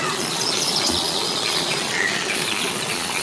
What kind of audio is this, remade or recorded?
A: remade